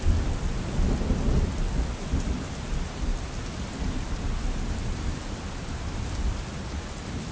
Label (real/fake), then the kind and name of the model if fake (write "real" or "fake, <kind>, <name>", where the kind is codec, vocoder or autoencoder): real